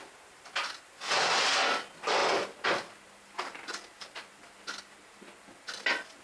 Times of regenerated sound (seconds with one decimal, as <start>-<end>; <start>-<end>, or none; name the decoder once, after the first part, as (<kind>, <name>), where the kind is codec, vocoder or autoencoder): none